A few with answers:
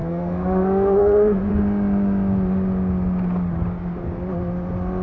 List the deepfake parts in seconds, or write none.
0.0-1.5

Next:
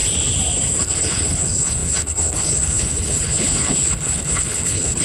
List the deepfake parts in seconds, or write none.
0.8-5.0

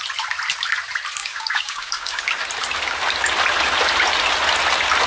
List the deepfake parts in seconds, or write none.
1.2-2.2